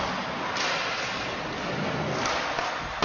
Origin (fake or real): real